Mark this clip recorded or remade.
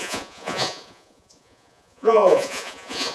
remade